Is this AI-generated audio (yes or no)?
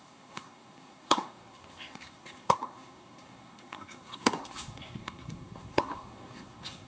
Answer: yes